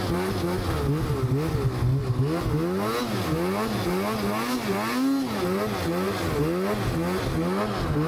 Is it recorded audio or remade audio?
recorded